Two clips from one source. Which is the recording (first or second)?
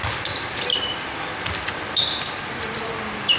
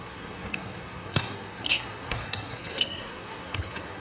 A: first